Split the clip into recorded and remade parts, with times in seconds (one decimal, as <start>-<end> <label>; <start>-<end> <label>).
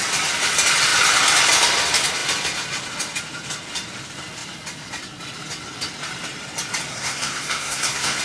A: 0.0-6.9 recorded; 6.9-8.2 remade